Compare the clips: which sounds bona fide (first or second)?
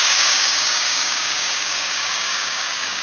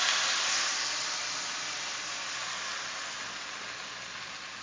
second